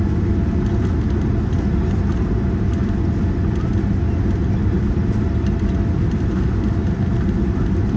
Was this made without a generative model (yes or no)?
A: yes